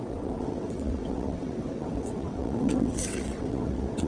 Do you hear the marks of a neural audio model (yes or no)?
yes